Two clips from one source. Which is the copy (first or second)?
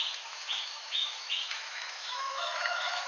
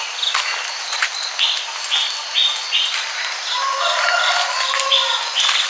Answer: first